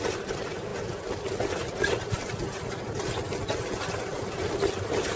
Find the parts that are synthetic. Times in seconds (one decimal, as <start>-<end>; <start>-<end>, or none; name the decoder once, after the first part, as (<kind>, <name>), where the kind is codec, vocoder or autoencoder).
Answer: none